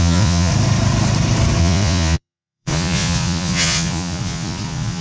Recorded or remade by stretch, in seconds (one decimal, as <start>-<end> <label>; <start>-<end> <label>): 0.0-0.5 remade; 0.5-1.6 recorded; 1.6-5.0 remade